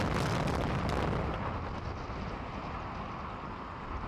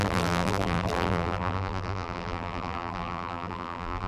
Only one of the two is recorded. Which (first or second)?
first